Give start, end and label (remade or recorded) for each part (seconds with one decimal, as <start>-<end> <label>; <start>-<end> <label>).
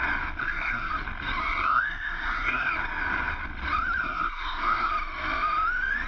0.0-0.4 recorded; 0.4-0.9 remade; 0.9-1.4 recorded; 1.4-2.7 remade; 2.7-4.0 recorded; 4.0-4.9 remade; 4.9-6.1 recorded